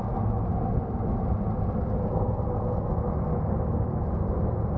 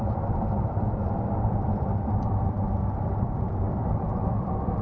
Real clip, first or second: first